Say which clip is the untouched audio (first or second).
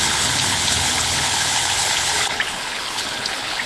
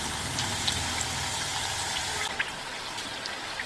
second